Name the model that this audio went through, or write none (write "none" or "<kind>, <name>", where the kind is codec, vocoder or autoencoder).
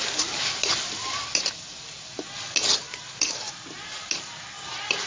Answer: none